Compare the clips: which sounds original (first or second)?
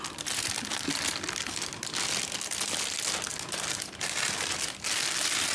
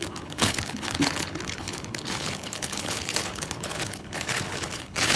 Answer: first